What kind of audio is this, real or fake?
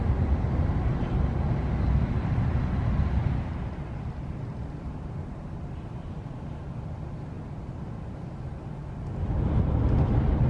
real